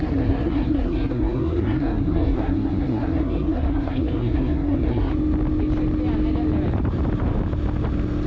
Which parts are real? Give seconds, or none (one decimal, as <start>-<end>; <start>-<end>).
5.1-8.3